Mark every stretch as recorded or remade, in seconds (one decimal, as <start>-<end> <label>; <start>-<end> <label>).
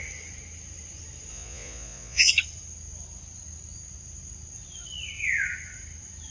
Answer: 0.0-1.3 recorded; 1.3-2.3 remade; 2.3-6.3 recorded